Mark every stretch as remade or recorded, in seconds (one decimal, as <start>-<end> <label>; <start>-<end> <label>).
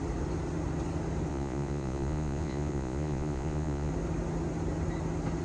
0.0-1.3 recorded; 1.3-3.9 remade; 3.9-5.4 recorded